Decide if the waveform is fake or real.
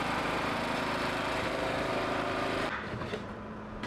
fake